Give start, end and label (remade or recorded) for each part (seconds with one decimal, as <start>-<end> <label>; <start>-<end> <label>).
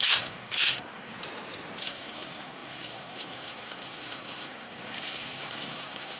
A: 0.0-1.2 remade; 1.2-1.8 recorded; 1.8-6.2 remade